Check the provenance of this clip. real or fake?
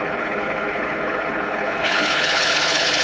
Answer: fake